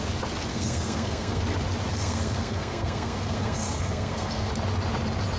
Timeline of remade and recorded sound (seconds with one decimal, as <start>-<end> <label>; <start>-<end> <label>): 0.0-0.5 recorded; 0.5-1.4 remade; 1.4-1.9 recorded; 1.9-4.5 remade; 4.5-5.4 recorded